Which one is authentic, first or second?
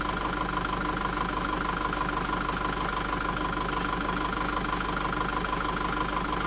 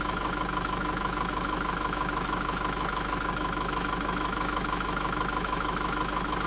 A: first